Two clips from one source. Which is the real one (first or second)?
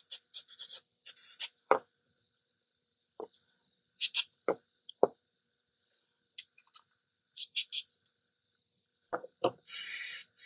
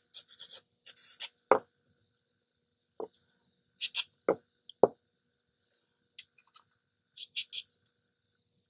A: second